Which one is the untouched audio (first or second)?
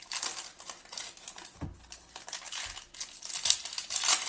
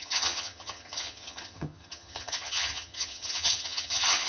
first